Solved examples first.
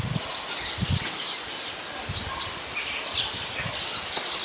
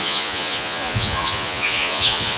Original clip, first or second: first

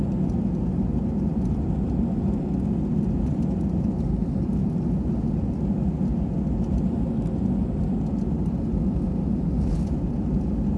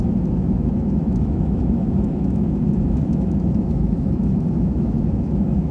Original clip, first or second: first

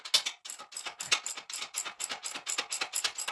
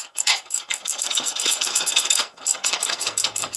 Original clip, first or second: first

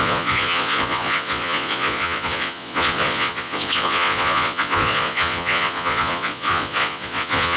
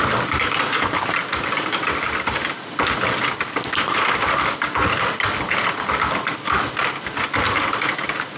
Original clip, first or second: second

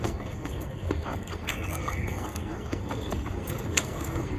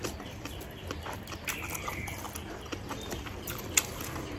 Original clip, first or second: second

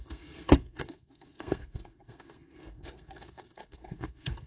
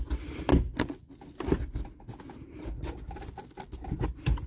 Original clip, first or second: second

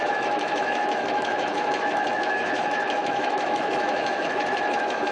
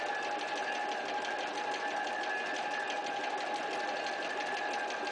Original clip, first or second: second